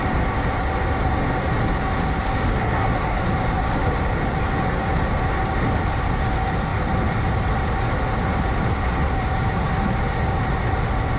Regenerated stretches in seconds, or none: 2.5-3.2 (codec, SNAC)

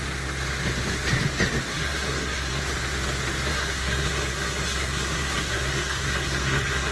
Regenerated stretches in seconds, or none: 1.7-2.6 (codec, SNAC); 3.5-6.9

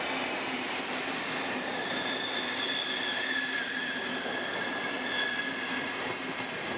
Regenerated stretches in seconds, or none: none

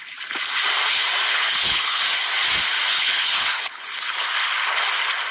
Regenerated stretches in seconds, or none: 1.3-2.0 (codec, HILCodec); 2.9-3.8

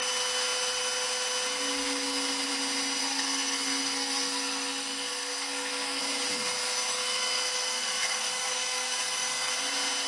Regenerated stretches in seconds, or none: 3.0-6.0 (codec, SNAC); 6.9-9.5

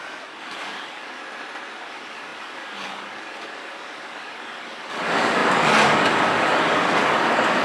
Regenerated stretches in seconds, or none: 0.0-1.2 (codec, DAC); 1.8-7.6

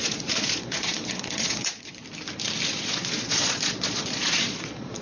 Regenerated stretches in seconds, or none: 0.0-2.0 (vocoder, Vocos); 2.7-5.0